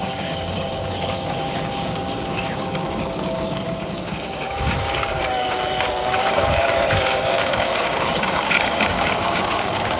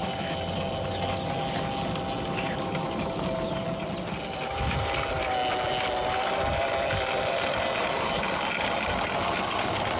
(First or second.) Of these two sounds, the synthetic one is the first